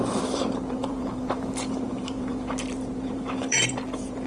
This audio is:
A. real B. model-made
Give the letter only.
B